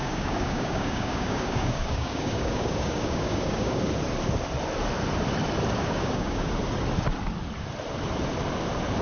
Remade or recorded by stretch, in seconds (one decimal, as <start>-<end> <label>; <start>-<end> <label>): 0.0-3.8 remade; 3.8-5.8 recorded; 5.8-6.5 remade; 6.5-9.0 recorded